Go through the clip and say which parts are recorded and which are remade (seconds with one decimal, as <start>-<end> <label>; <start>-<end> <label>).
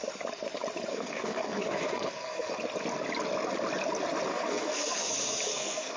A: 0.0-0.9 recorded; 0.9-2.5 remade; 2.5-4.3 recorded; 4.3-5.1 remade; 5.1-5.5 recorded; 5.5-6.0 remade